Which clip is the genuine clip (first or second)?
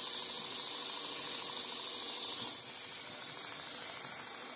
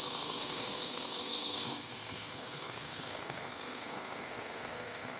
first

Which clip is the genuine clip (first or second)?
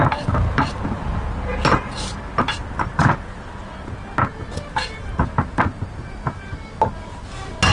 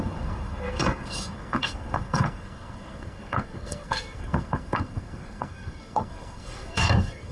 first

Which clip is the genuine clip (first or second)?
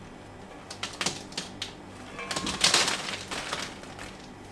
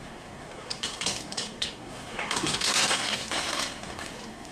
first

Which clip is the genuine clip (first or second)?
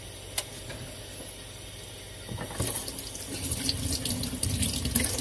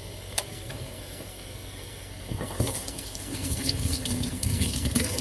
first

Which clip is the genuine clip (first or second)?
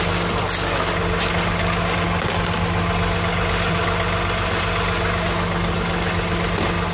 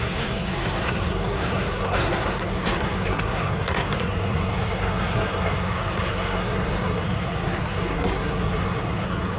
first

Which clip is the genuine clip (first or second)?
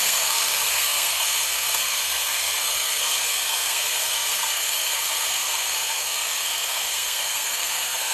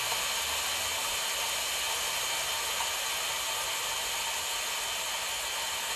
second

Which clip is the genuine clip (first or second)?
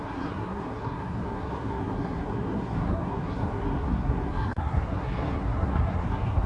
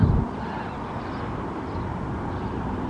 second